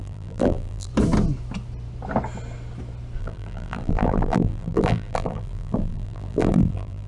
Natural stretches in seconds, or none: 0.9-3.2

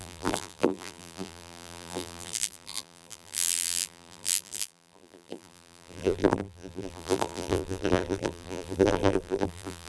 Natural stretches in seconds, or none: none

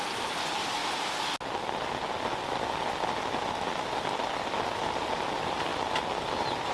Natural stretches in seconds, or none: 0.8-4.8; 5.7-6.3

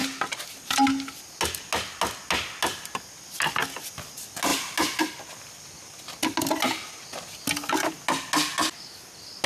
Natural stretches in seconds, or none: 0.0-9.5

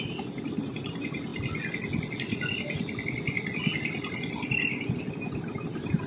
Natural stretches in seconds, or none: 1.3-5.0

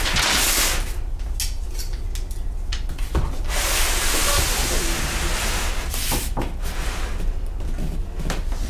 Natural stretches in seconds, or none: 0.0-8.7